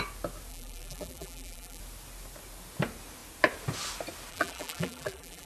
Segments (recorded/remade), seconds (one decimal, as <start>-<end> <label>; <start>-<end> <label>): 0.0-0.5 recorded; 0.5-1.8 remade; 1.8-4.3 recorded; 4.3-5.5 remade